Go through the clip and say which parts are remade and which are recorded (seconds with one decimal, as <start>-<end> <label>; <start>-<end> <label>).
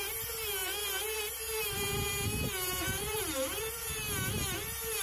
0.0-5.0 recorded